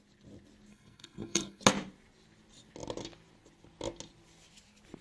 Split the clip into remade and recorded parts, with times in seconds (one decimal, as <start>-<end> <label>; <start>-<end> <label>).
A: 0.0-0.7 recorded; 0.7-1.6 remade; 1.6-5.0 recorded